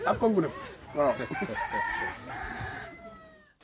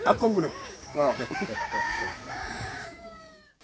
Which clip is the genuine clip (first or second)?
first